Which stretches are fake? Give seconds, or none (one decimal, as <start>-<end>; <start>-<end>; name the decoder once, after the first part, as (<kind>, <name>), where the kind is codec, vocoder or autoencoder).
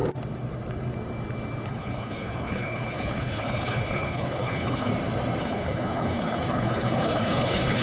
1.7-4.9 (codec, HILCodec); 5.4-7.8